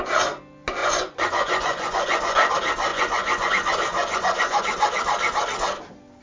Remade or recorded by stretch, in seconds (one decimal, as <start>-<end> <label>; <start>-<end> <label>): 0.0-0.8 recorded; 0.8-2.5 remade; 2.5-2.9 recorded; 2.9-3.5 remade; 3.5-3.9 recorded; 3.9-4.6 remade; 4.6-6.2 recorded